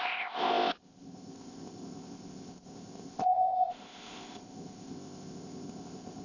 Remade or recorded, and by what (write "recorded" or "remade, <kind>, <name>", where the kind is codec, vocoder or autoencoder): remade, codec, ZipCodec